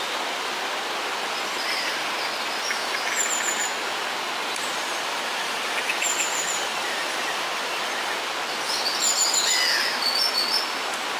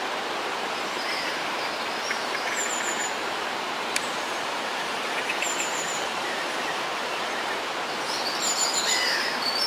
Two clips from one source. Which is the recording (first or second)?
first